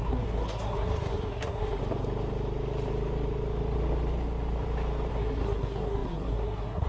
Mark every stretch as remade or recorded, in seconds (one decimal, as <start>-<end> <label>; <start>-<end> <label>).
0.0-1.8 remade; 1.8-5.1 recorded; 5.1-6.9 remade